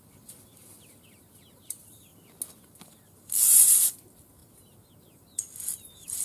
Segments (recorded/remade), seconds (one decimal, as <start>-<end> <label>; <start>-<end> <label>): 0.0-2.1 remade; 2.1-2.6 recorded; 2.6-4.4 remade; 4.4-5.0 recorded; 5.0-6.2 remade